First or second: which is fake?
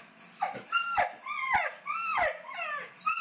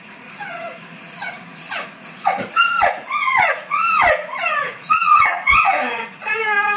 second